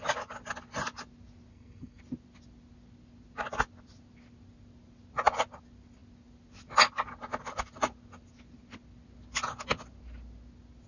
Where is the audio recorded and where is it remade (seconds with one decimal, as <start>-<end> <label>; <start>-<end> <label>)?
0.0-1.5 recorded; 1.5-2.0 remade; 2.0-10.9 recorded